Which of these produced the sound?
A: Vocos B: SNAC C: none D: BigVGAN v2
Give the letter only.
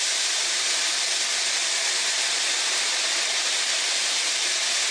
C